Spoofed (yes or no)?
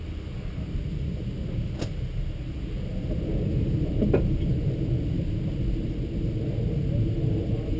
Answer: no